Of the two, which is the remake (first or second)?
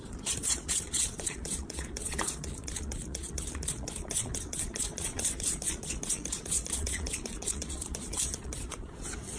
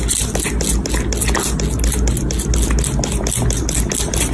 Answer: first